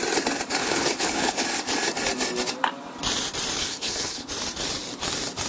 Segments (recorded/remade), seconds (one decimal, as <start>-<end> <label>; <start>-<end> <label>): 0.0-0.6 recorded; 0.6-1.4 remade; 1.4-3.6 recorded; 3.6-4.3 remade; 4.3-5.5 recorded